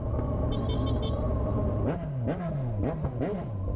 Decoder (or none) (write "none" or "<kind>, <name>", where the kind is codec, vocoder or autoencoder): none